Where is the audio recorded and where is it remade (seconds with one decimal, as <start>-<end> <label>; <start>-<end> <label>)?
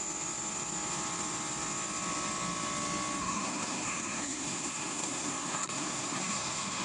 0.0-3.2 recorded; 3.2-6.8 remade